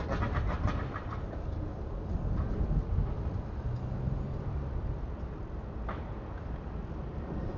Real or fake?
real